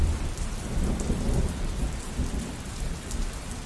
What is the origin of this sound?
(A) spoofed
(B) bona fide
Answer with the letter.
B